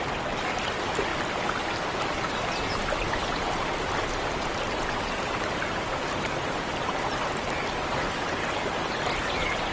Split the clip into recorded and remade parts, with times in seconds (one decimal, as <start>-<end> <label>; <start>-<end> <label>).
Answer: 0.0-9.7 recorded